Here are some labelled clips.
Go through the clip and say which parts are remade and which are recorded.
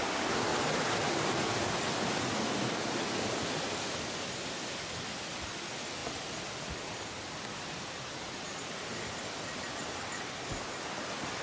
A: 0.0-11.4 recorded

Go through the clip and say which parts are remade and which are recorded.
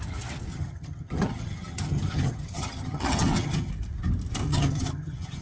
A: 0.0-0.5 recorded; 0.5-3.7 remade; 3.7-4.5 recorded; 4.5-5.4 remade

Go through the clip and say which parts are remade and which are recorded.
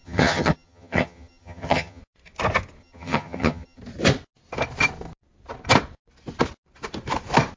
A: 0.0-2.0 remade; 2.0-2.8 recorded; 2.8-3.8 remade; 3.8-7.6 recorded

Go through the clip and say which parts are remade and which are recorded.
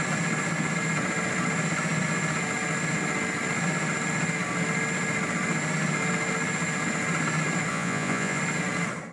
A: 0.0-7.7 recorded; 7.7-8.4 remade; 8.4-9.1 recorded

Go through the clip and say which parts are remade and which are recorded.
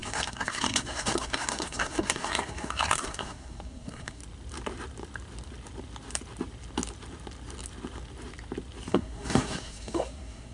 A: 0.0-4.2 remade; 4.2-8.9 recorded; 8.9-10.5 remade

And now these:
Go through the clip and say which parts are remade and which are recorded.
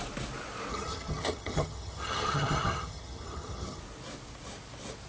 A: 0.0-0.7 recorded; 0.7-3.8 remade; 3.8-5.1 recorded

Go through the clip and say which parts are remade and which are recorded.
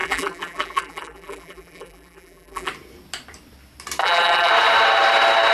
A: 0.0-2.7 remade; 2.7-4.0 recorded; 4.0-4.5 remade; 4.5-5.5 recorded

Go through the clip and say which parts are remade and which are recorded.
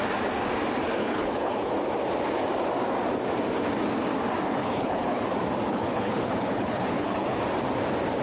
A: 0.0-1.0 recorded; 1.0-1.7 remade; 1.7-4.6 recorded; 4.6-5.2 remade; 5.2-5.7 recorded; 5.7-7.4 remade; 7.4-8.2 recorded